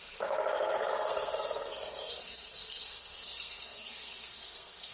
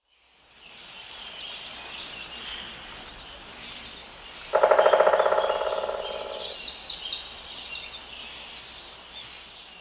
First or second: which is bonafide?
second